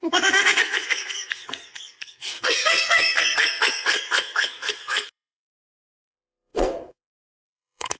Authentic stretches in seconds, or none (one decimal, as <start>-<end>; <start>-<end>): none

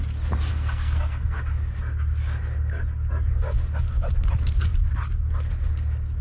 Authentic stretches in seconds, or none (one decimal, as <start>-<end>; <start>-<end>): 0.0-0.5; 1.4-6.2